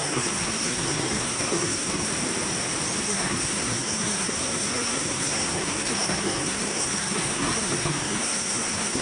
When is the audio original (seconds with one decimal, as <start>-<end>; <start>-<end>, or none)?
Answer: 2.1-3.0

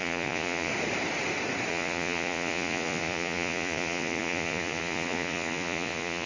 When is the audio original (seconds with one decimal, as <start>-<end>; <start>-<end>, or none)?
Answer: 0.7-1.7

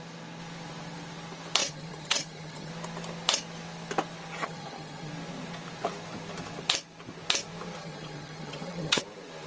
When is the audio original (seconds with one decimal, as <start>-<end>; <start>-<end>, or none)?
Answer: 0.0-1.6; 2.7-4.4; 5.1-7.8; 9.0-9.5

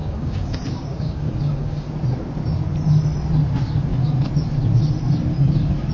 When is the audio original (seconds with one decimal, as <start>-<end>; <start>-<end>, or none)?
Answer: 1.9-5.9

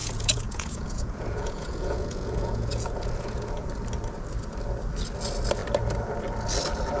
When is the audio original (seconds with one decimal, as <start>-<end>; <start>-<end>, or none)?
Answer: 3.7-7.0

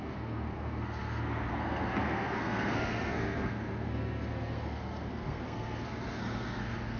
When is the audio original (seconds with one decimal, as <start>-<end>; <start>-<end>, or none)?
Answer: none